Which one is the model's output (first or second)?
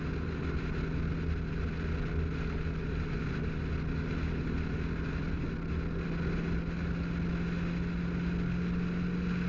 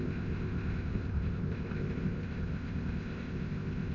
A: second